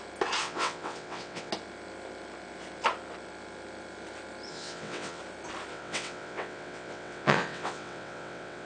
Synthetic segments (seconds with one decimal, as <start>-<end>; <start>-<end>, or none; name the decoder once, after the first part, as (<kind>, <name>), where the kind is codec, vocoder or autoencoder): 0.4-1.5 (vocoder, WaveNeXt); 4.5-5.2; 5.7-8.7